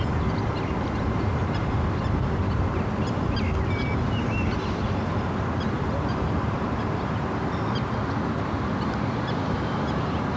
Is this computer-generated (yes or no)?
no